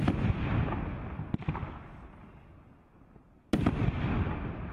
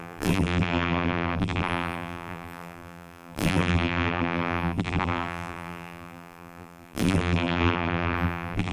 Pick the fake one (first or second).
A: second